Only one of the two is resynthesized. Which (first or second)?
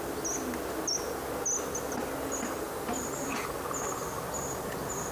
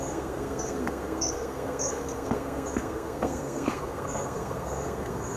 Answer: second